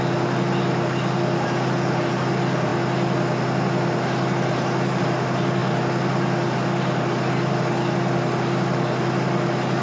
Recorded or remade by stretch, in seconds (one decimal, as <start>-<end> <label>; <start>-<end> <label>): 0.0-9.8 recorded